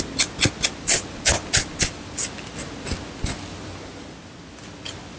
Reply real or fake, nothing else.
real